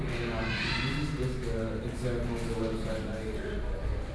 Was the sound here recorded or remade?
recorded